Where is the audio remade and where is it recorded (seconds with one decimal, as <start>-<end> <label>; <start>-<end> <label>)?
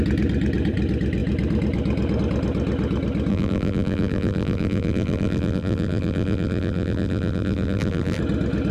0.0-3.3 recorded; 3.3-8.2 remade; 8.2-8.7 recorded